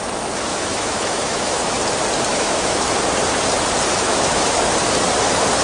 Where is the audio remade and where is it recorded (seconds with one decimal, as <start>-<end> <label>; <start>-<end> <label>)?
0.0-0.5 recorded; 0.5-1.8 remade; 1.8-2.3 recorded; 2.3-2.8 remade; 2.8-3.9 recorded; 3.9-4.6 remade; 4.6-5.6 recorded